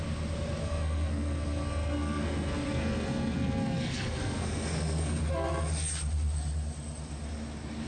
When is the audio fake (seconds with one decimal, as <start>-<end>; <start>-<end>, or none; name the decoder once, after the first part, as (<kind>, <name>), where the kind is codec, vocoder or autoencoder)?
0.6-5.2 (codec, SNAC)

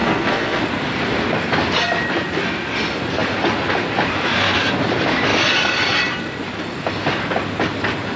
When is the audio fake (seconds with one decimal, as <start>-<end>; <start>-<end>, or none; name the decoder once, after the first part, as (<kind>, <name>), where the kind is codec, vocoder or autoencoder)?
0.0-0.6 (codec, SNAC)

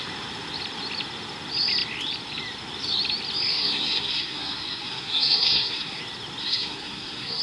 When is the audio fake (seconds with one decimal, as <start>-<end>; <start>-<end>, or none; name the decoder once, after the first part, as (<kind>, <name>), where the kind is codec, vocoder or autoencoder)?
3.5-6.0 (codec, SNAC); 6.4-7.4

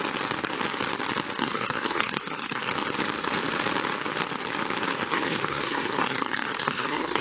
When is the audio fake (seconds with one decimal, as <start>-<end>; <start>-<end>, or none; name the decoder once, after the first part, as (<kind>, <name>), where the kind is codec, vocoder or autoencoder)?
1.4-2.7 (codec, SNAC); 5.1-7.2

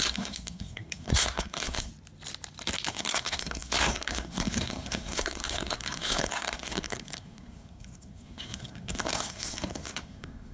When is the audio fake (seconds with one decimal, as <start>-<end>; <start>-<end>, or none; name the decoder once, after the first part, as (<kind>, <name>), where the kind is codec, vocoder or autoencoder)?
0.0-1.9 (codec, SNAC); 2.9-10.5

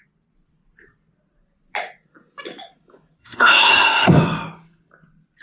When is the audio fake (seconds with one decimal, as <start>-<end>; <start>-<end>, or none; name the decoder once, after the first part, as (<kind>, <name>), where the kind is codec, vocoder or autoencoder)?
3.2-4.1 (codec, SNAC)

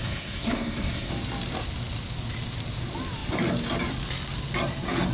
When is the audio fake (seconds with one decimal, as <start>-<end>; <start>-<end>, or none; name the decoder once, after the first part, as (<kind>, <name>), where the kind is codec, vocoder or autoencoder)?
0.0-1.1 (codec, SNAC)

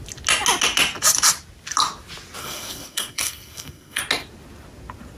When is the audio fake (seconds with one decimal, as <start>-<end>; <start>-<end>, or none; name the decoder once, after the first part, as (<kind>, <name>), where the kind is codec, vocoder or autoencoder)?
2.4-4.0 (codec, SNAC)